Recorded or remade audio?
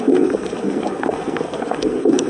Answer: remade